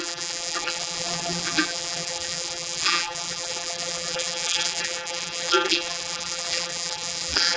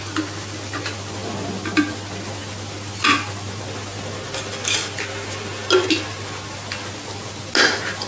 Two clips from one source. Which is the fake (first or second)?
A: first